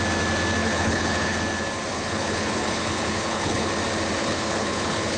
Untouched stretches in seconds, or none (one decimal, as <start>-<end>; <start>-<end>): 0.0-0.6; 1.4-1.9; 3.7-4.2